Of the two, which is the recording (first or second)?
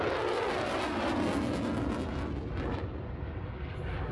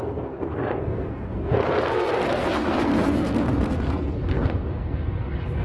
first